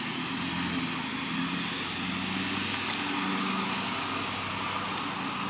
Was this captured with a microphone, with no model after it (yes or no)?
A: yes